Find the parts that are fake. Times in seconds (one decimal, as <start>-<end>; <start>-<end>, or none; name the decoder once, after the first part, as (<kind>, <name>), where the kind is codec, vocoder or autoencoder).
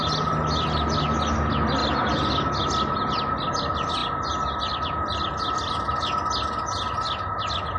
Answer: 1.8-2.5 (vocoder, BigVGAN v2)